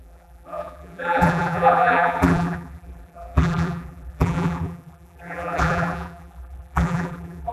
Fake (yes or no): yes